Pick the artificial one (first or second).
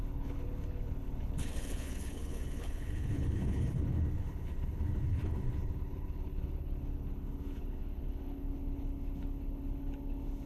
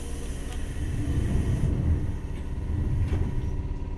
first